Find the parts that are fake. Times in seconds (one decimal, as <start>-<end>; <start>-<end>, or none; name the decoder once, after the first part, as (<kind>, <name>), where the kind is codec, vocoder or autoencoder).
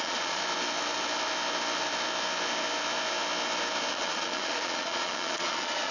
0.0-0.4 (vocoder, Vocos); 3.9-5.9